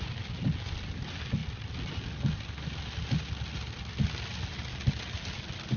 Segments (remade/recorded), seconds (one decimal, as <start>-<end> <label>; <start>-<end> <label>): 0.0-5.8 recorded